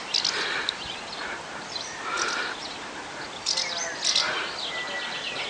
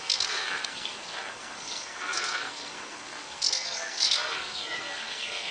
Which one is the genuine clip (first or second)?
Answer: first